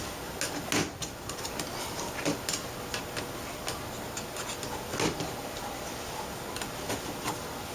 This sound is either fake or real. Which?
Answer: real